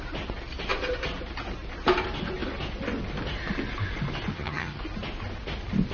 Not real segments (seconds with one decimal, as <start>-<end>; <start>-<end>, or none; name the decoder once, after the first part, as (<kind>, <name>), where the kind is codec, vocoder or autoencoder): 4.3-4.8 (vocoder, HiFi-GAN)